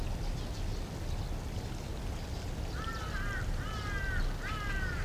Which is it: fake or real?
real